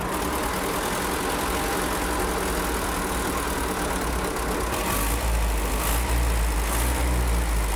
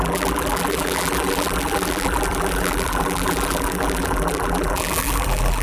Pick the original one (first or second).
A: first